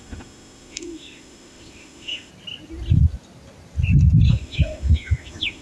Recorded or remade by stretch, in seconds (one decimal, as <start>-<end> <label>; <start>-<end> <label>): 0.0-2.3 remade; 2.3-4.3 recorded; 4.3-5.6 remade